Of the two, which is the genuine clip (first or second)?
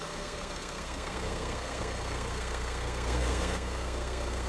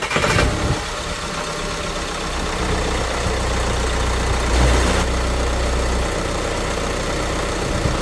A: second